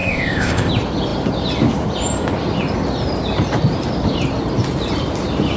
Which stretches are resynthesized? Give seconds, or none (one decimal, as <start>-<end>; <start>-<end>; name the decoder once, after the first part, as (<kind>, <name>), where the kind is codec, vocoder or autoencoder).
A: 0.0-0.7 (codec, ZipCodec)